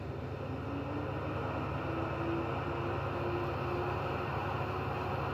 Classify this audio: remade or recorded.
recorded